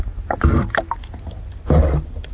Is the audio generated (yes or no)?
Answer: no